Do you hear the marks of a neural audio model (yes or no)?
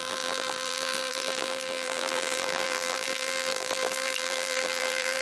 yes